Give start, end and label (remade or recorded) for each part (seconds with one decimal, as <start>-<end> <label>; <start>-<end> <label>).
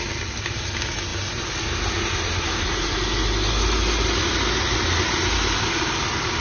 0.0-6.4 recorded